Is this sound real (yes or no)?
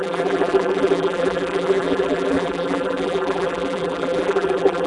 no